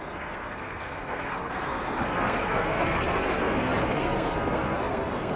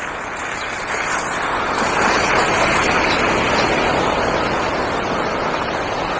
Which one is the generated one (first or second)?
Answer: first